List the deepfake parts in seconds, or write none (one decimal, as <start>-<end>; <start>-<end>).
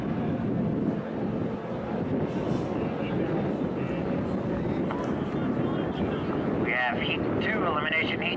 none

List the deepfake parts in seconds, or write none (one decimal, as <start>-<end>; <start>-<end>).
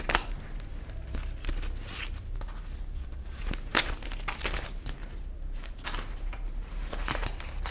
none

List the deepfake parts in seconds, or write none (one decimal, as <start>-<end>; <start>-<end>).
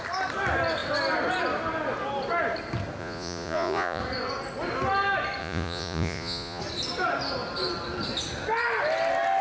3.0-4.0; 5.4-6.6